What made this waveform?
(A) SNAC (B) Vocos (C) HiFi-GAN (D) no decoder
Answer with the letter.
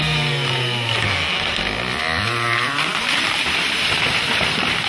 D